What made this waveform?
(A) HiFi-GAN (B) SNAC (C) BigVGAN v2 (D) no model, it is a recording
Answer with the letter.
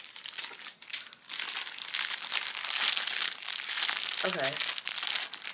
D